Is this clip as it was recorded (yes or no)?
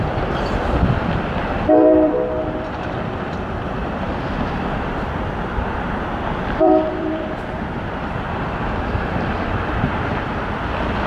no